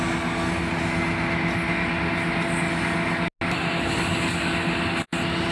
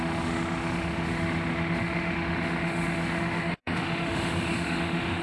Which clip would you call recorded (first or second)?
first